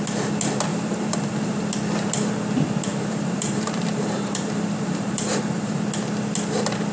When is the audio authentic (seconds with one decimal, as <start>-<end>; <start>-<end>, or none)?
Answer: 0.0-0.7; 1.5-2.9; 5.8-6.9